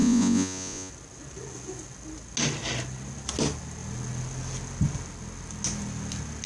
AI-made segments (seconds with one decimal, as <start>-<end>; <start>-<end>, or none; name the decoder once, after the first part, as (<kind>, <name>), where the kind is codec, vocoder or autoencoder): 0.0-0.9 (vocoder, Vocos)